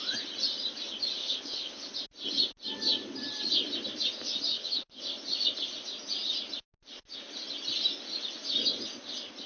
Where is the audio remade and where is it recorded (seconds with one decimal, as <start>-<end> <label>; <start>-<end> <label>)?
0.0-1.2 recorded; 1.2-1.9 remade; 1.9-4.5 recorded; 4.5-5.0 remade; 5.0-9.5 recorded